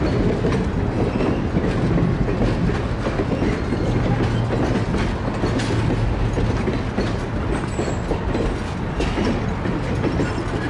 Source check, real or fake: real